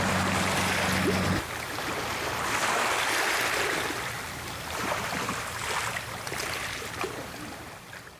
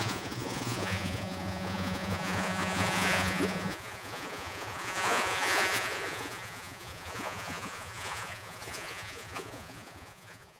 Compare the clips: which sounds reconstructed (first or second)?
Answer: second